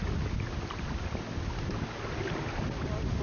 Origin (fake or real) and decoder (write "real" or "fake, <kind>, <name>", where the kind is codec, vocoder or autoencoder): real